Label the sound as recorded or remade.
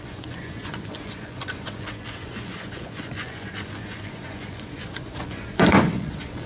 remade